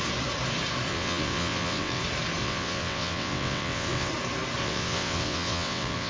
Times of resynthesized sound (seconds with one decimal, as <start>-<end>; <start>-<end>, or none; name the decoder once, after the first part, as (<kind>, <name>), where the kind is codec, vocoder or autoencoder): 0.9-2.0 (vocoder, WaveNeXt); 2.4-4.1; 4.6-6.1